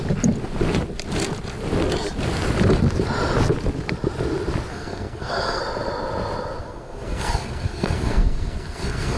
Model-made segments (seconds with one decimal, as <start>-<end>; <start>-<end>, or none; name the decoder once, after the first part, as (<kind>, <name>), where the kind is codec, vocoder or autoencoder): 4.7-5.6 (codec, SNAC); 6.6-9.2